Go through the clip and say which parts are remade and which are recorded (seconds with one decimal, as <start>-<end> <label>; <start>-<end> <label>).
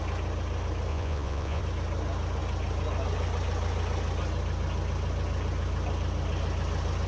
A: 0.0-0.9 recorded; 0.9-1.6 remade; 1.6-7.1 recorded